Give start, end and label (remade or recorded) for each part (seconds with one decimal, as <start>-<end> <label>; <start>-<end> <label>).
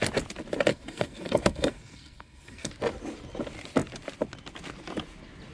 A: 0.0-0.7 recorded; 0.7-2.7 remade; 2.7-5.5 recorded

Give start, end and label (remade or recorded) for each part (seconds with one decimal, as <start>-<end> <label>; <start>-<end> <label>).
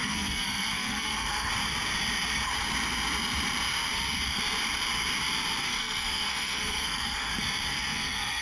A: 0.0-1.5 remade; 1.5-5.6 recorded; 5.6-7.3 remade; 7.3-7.7 recorded; 7.7-8.4 remade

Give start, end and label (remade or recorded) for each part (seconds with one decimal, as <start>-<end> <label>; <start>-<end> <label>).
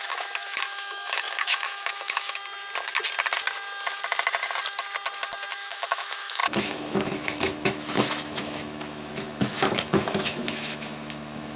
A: 0.0-2.4 remade; 2.4-5.5 recorded; 5.5-11.6 remade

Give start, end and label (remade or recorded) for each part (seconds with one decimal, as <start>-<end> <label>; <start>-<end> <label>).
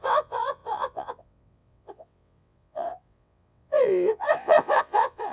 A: 0.0-5.3 remade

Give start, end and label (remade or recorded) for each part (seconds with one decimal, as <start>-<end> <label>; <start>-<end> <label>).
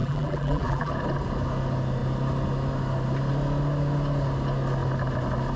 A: 0.0-0.9 remade; 0.9-5.6 recorded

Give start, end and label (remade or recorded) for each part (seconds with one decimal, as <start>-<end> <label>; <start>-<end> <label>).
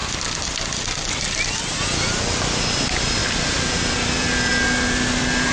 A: 0.0-3.2 recorded; 3.2-4.5 remade; 4.5-5.5 recorded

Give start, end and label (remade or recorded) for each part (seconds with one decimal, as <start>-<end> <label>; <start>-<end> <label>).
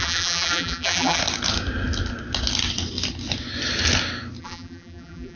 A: 0.0-1.2 remade; 1.2-4.4 recorded; 4.4-5.4 remade